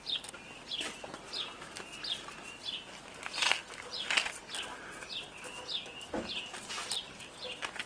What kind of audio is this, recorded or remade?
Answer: recorded